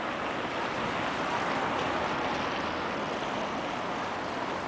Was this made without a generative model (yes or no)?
yes